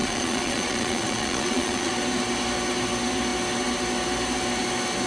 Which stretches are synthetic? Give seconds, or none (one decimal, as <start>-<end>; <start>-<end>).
0.0-1.9